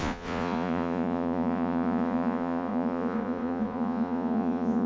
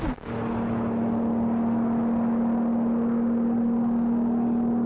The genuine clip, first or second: second